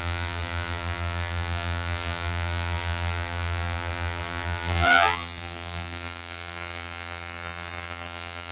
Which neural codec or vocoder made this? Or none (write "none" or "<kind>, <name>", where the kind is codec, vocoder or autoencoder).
vocoder, BigVGAN v2